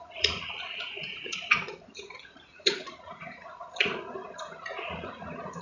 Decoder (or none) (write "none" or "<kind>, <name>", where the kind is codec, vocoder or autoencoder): vocoder, Vocos